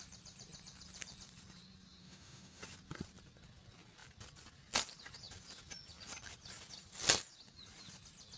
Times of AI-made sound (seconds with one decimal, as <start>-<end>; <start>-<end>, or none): 2.0-2.6